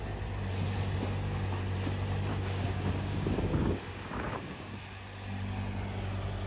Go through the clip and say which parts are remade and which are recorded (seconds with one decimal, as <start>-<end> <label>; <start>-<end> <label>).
0.0-2.3 recorded; 2.3-4.8 remade; 4.8-6.5 recorded

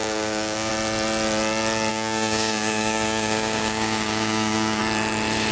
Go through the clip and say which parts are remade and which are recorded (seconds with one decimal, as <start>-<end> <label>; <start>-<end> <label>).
0.0-0.7 remade; 0.7-1.9 recorded; 1.9-4.8 remade; 4.8-5.5 recorded

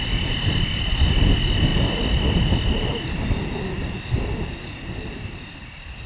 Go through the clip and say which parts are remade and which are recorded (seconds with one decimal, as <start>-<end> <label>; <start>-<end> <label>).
0.0-6.1 recorded

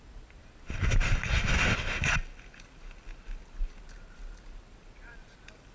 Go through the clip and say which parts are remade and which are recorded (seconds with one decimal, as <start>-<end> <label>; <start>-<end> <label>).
0.0-5.7 recorded

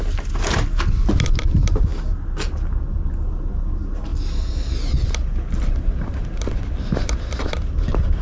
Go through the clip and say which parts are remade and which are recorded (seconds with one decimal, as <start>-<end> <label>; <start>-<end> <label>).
0.0-8.2 recorded

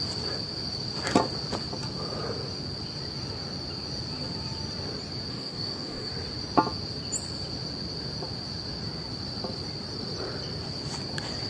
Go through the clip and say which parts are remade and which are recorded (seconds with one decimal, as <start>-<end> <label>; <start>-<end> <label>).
0.0-5.3 recorded; 5.3-6.1 remade; 6.1-11.5 recorded

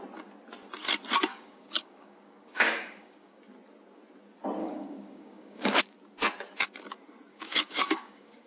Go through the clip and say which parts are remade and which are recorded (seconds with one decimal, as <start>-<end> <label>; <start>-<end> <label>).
0.0-1.3 recorded; 1.3-3.4 remade; 3.4-4.6 recorded; 4.6-5.8 remade; 5.8-7.3 recorded; 7.3-8.5 remade

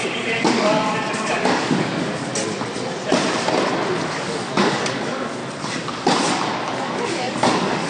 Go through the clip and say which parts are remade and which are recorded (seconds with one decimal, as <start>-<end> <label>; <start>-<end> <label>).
0.0-2.3 remade; 2.3-4.0 recorded; 4.0-5.4 remade; 5.4-6.7 recorded; 6.7-7.9 remade